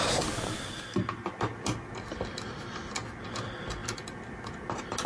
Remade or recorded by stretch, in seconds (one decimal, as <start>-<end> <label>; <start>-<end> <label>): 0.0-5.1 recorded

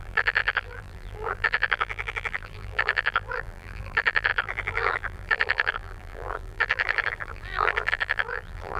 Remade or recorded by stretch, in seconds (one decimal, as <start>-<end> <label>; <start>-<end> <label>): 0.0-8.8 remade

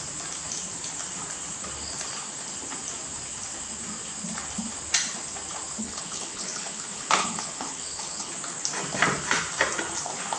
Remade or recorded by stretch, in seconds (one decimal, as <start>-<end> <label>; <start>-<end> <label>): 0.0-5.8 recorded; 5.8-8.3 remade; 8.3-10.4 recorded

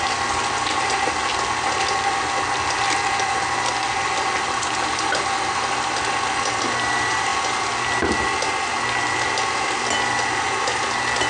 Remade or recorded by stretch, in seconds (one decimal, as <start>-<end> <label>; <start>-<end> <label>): 0.0-11.3 recorded

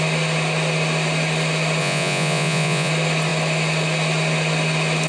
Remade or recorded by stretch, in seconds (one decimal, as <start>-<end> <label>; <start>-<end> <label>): 0.0-1.8 recorded; 1.8-2.9 remade; 2.9-5.1 recorded

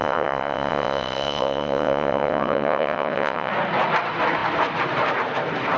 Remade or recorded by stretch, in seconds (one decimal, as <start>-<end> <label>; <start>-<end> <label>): 0.0-3.5 remade; 3.5-5.8 recorded

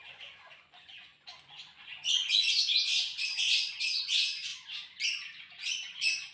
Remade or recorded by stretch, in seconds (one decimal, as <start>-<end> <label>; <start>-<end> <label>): 0.0-4.5 remade; 4.5-5.4 recorded; 5.4-6.3 remade